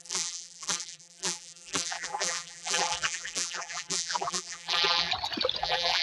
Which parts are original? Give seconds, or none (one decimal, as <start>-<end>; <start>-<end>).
5.1-5.6